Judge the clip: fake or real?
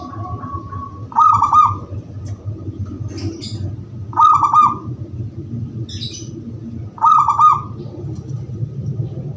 real